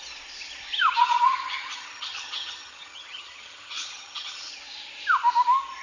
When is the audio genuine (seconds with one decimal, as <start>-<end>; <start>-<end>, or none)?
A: 0.0-1.0; 4.5-5.8